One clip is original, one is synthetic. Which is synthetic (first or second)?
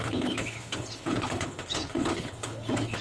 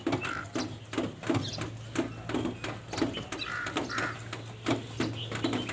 first